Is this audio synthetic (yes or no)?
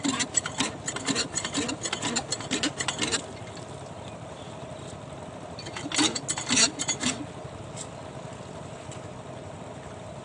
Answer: no